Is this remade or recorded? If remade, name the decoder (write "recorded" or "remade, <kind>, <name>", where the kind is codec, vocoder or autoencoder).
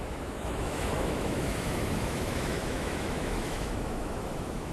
remade, autoencoder, DAC-VAE